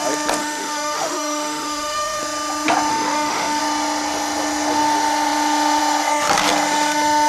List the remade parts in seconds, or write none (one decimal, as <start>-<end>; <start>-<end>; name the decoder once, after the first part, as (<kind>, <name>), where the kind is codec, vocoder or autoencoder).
0.4-2.2 (autoencoder, DAC-VAE); 2.9-3.6